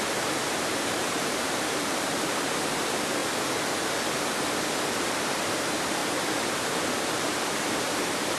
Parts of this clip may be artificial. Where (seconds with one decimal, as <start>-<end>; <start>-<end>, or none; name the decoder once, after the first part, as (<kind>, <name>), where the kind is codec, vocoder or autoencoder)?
0.0-3.2 (vocoder, BigVGAN v2); 5.0-6.0; 6.7-8.4